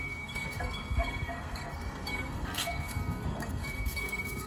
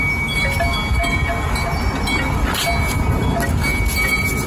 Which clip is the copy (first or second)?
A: first